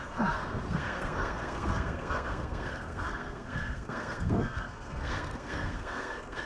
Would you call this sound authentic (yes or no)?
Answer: no